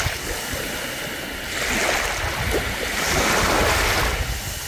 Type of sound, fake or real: real